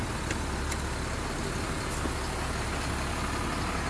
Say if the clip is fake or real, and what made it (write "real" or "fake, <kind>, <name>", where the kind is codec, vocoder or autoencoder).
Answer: real